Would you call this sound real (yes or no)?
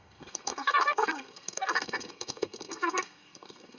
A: no